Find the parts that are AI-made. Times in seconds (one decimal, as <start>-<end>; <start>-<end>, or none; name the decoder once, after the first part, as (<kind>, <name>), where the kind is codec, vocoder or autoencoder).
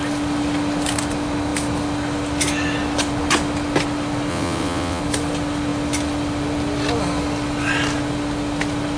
4.3-5.0 (vocoder, WaveNeXt)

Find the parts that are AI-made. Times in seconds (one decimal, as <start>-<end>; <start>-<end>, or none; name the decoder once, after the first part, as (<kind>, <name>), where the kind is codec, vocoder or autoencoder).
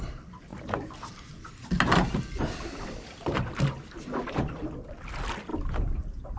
none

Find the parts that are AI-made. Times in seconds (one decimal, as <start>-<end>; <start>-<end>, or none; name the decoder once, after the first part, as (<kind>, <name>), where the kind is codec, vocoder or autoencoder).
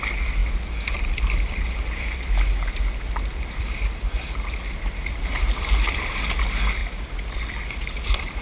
none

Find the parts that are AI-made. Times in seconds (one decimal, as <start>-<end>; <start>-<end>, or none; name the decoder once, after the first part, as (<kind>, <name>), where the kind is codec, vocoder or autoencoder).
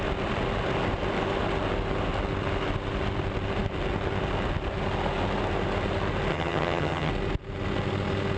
6.3-7.1 (vocoder, HiFi-GAN)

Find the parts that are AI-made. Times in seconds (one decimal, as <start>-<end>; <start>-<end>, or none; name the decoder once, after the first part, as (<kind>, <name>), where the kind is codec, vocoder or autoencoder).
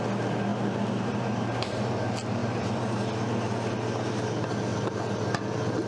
0.5-1.9 (vocoder, BigVGAN v2); 2.4-3.1; 4.7-5.2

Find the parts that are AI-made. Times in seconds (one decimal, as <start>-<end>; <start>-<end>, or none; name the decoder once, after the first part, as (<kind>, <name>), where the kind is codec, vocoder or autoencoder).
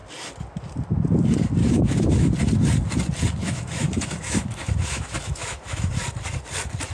1.6-2.3 (autoencoder, DAC-VAE); 3.4-5.9